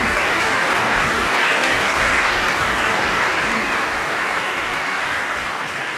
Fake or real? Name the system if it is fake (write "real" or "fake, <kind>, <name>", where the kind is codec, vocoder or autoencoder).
fake, codec, DAC